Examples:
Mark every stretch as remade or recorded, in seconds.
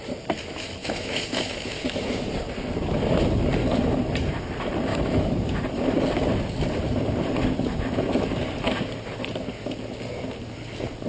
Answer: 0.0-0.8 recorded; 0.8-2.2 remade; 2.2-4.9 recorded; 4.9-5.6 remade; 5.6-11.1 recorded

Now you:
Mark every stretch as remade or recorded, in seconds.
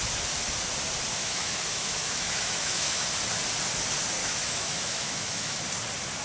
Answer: 0.0-1.2 recorded; 1.2-3.1 remade; 3.1-4.2 recorded; 4.2-5.6 remade; 5.6-6.2 recorded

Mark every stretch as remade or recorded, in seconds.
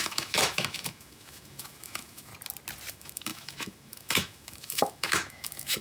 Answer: 0.0-2.3 remade; 2.3-2.9 recorded; 2.9-5.8 remade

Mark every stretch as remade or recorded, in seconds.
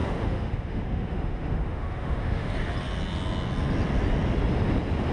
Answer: 0.0-2.5 remade; 2.5-5.1 recorded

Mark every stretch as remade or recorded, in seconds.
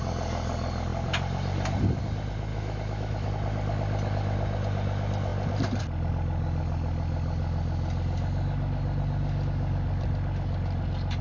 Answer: 0.0-2.5 recorded; 2.5-3.3 remade; 3.3-11.2 recorded